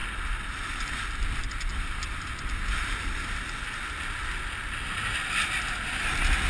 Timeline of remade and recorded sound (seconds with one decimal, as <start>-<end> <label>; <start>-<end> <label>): 0.0-6.5 recorded

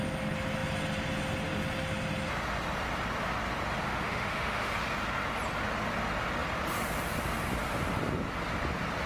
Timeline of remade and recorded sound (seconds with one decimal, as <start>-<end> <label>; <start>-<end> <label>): 0.0-3.8 recorded; 3.8-4.7 remade; 4.7-9.1 recorded

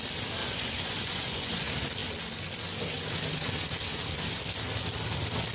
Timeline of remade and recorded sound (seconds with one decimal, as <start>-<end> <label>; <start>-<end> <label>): 0.0-0.4 recorded; 0.4-1.6 remade; 1.6-5.5 recorded

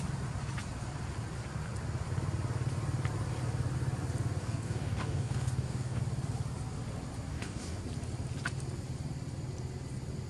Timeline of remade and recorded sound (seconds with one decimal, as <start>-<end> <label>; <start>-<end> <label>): 0.0-4.4 recorded; 4.4-6.0 remade; 6.0-7.3 recorded; 7.3-7.8 remade; 7.8-10.3 recorded

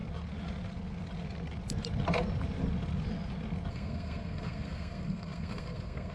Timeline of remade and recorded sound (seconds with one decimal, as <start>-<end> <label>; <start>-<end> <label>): 0.0-3.7 recorded; 3.7-6.1 remade

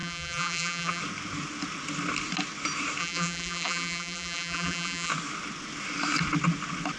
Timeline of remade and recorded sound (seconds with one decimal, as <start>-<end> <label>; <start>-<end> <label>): 0.0-1.0 remade; 1.0-3.0 recorded; 3.0-5.1 remade; 5.1-7.0 recorded

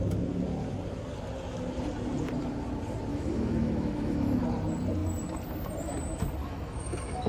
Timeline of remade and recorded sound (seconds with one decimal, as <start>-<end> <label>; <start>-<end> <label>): 0.0-3.1 recorded; 3.1-4.4 remade; 4.4-6.4 recorded; 6.4-7.3 remade